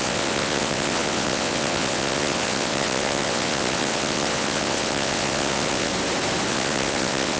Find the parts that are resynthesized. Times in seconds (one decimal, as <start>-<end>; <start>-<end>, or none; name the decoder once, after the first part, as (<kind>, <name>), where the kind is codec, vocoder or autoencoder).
0.0-5.9 (vocoder, WaveNeXt); 6.5-7.4